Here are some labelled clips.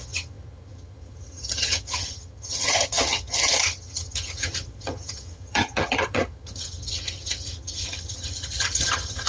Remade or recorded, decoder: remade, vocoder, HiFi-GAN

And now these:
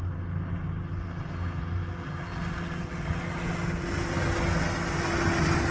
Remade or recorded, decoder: recorded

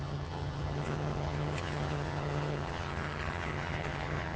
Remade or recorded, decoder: remade, vocoder, HiFi-GAN